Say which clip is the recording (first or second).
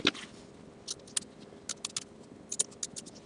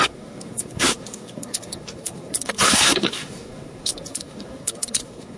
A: first